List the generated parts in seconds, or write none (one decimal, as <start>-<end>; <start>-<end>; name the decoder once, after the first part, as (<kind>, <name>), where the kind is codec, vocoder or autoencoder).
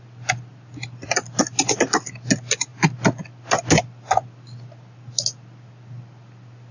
none